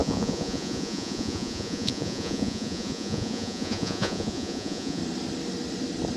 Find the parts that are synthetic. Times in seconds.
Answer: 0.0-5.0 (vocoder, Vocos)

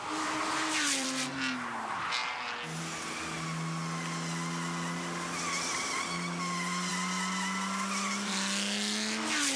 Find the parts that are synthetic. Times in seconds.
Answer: none

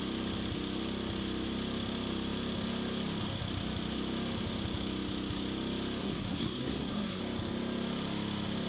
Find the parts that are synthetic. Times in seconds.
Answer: 6.0-7.2 (codec, SNAC)